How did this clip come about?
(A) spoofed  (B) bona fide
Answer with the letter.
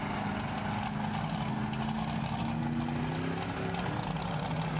B